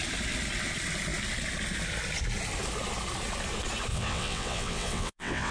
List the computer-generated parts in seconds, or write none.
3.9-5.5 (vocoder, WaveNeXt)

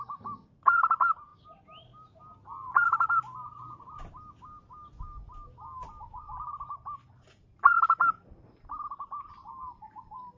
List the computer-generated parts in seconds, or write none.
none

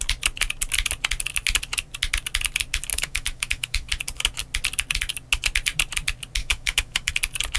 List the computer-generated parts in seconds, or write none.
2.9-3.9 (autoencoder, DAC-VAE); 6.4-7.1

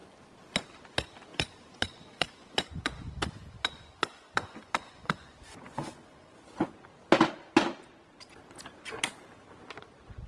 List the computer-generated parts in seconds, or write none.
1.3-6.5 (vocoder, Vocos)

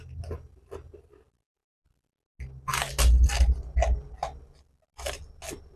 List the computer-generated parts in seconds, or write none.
none

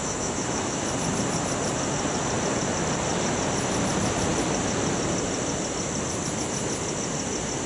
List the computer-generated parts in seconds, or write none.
0.0-0.8 (autoencoder, DAC-VAE)

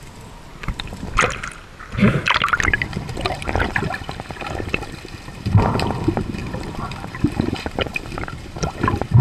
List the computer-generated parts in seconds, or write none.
0.5-4.8 (vocoder, BigVGAN v2); 6.4-9.2